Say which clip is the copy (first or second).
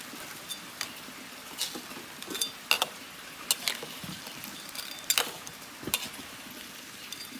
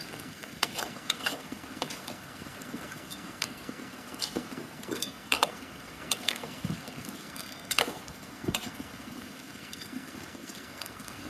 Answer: second